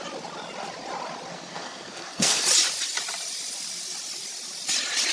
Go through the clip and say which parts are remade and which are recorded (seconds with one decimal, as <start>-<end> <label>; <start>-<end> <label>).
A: 0.0-1.3 recorded; 1.3-2.4 remade; 2.4-5.1 recorded